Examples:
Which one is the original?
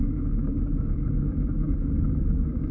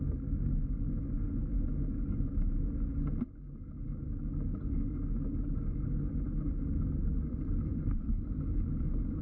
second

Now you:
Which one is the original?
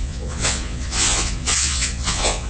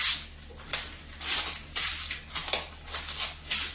second